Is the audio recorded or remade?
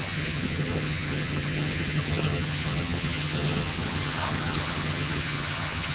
remade